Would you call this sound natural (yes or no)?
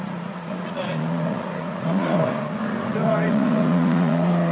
no